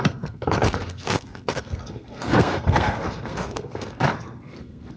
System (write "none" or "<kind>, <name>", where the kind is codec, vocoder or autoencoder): codec, SNAC